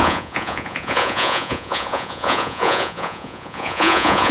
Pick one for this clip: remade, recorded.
remade